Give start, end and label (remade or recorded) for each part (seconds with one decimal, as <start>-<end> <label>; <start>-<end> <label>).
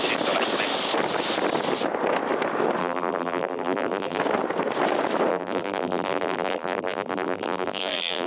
0.0-2.8 recorded; 2.8-4.2 remade; 4.2-5.3 recorded; 5.3-8.3 remade